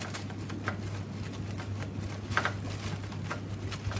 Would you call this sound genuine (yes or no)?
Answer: yes